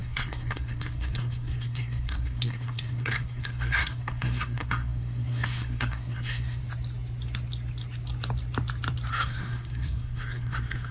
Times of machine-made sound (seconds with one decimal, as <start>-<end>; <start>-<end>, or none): 0.0-6.6; 9.1-10.9